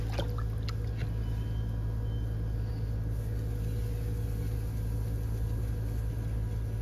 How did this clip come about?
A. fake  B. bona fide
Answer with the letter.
B